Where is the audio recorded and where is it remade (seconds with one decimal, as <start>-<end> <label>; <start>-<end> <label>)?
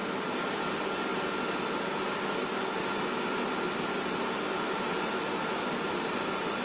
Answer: 0.0-1.1 remade; 1.1-4.1 recorded; 4.1-6.6 remade